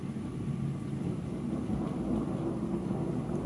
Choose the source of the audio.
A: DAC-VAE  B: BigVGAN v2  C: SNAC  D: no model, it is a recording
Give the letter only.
D